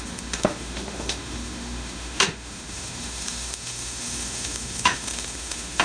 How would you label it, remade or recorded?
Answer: remade